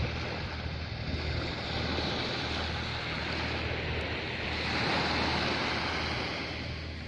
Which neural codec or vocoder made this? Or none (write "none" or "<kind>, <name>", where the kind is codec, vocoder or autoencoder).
none